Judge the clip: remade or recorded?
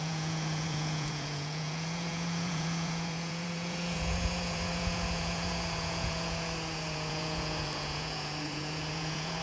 remade